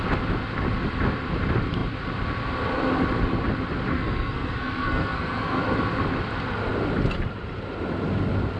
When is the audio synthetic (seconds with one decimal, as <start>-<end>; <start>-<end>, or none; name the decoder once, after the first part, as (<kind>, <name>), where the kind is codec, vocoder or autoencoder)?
3.9-5.6 (codec, SNAC)